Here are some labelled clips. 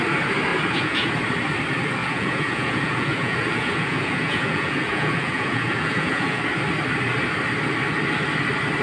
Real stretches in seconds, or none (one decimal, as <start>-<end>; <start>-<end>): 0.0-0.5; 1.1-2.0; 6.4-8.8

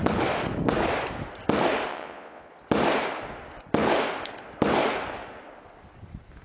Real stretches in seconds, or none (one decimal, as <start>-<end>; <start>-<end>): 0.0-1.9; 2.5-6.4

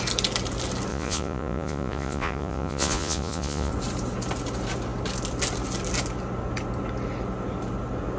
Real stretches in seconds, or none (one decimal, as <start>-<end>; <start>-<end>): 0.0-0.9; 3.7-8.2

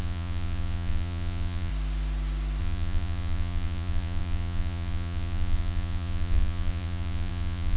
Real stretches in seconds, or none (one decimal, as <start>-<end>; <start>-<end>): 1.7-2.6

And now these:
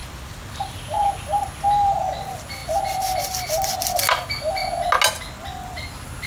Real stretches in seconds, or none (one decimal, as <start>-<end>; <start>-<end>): 0.0-6.3

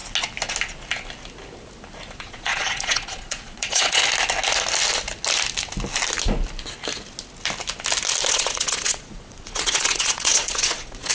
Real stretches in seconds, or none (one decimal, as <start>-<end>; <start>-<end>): 0.0-2.2; 4.0-8.3

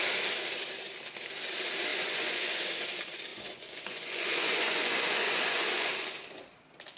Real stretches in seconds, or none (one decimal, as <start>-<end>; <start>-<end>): 0.0-1.9; 2.6-3.3; 6.1-7.0

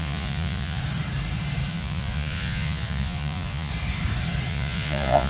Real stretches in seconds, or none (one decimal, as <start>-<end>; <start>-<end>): 0.8-1.7; 3.7-4.5